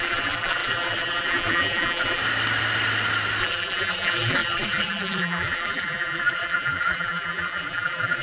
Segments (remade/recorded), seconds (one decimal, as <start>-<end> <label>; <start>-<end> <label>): 0.0-2.2 remade; 2.2-3.4 recorded; 3.4-8.2 remade